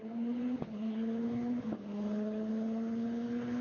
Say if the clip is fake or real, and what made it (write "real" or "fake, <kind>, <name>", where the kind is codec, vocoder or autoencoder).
fake, codec, HILCodec